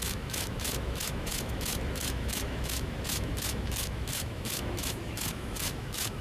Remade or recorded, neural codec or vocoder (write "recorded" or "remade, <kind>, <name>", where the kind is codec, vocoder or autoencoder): remade, autoencoder, DAC-VAE